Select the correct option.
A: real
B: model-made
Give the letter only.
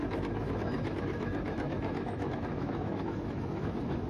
B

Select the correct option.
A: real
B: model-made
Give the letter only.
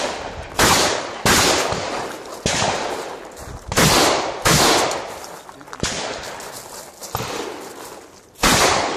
A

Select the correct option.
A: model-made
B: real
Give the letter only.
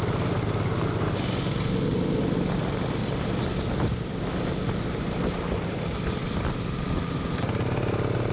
B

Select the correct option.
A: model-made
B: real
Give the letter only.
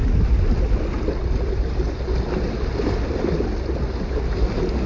B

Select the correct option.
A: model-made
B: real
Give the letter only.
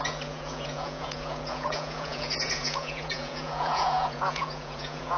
A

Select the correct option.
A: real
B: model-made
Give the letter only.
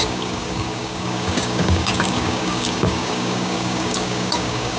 B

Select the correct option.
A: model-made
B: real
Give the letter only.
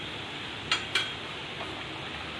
B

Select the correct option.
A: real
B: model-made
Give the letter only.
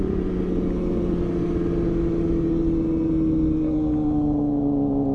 A